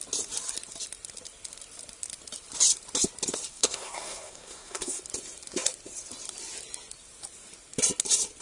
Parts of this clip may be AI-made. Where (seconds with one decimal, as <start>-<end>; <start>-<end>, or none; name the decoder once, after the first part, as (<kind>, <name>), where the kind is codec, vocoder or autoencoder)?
3.5-5.0 (codec, SNAC)